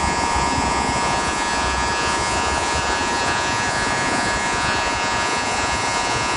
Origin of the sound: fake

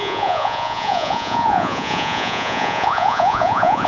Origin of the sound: fake